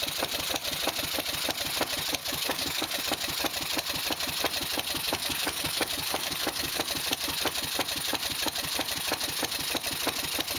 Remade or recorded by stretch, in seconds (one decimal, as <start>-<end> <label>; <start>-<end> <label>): 0.0-2.2 recorded; 2.2-3.0 remade; 3.0-5.1 recorded; 5.1-6.8 remade; 6.8-10.6 recorded